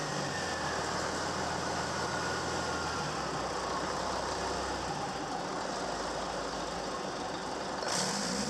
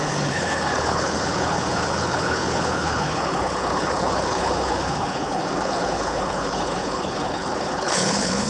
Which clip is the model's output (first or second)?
second